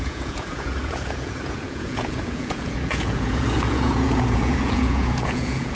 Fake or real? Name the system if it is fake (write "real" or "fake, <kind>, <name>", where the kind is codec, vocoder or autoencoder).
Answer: fake, vocoder, Vocos